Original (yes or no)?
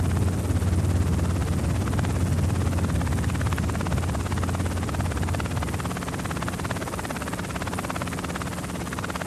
yes